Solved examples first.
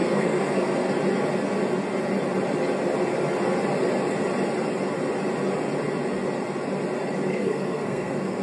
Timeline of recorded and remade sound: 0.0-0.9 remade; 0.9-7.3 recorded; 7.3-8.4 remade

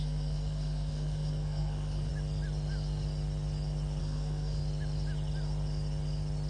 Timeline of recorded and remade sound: 0.0-2.1 remade; 2.1-4.0 recorded; 4.0-4.6 remade; 4.6-6.5 recorded